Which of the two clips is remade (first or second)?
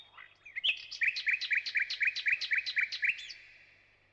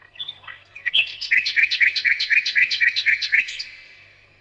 second